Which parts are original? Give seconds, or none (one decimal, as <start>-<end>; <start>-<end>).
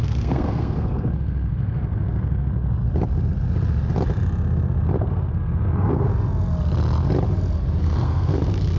2.5-5.0; 6.1-7.8